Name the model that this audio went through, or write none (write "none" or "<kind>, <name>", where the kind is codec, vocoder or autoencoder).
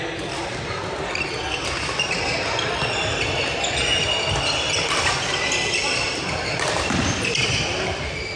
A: none